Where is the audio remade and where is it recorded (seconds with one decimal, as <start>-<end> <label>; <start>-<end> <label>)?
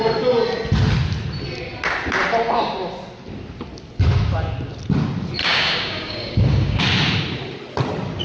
0.0-5.4 recorded; 5.4-6.8 remade; 6.8-8.2 recorded